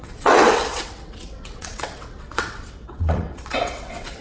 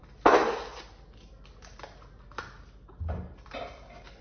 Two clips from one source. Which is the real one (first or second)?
second